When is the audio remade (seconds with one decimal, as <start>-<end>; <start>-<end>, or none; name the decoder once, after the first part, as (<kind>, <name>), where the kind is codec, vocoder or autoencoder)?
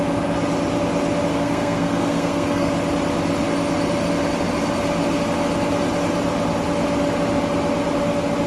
1.3-2.7 (codec, SNAC)